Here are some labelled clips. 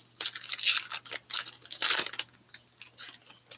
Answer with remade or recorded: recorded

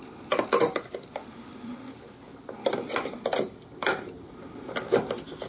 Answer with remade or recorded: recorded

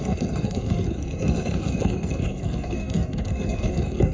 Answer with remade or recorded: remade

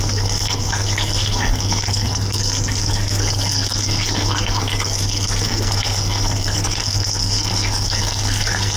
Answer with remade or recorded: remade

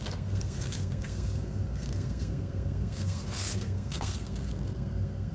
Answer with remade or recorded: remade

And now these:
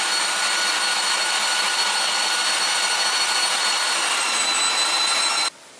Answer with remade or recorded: recorded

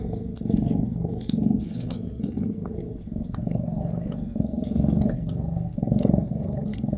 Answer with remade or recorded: remade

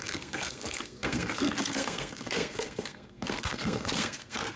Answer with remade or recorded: remade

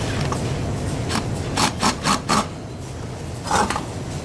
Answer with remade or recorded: recorded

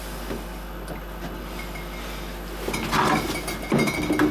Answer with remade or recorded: recorded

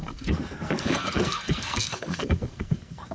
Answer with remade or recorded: remade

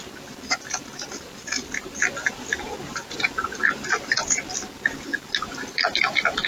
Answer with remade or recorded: recorded